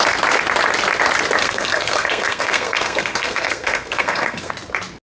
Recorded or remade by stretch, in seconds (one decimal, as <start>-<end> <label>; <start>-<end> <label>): 0.0-1.4 recorded; 1.4-4.5 remade; 4.5-5.1 recorded